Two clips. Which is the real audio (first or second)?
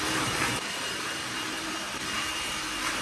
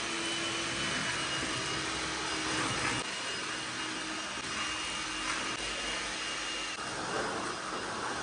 second